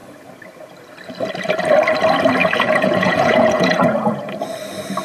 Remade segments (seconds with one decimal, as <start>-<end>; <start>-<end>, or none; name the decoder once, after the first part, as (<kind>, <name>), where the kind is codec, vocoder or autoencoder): 2.4-4.1 (vocoder, Vocos)